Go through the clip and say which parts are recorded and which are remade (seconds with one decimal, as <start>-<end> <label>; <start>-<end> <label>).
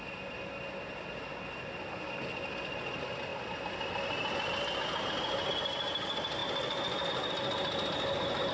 0.0-8.5 recorded